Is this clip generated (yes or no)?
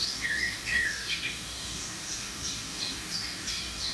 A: yes